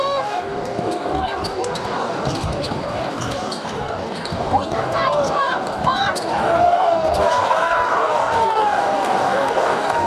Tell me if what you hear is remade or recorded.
remade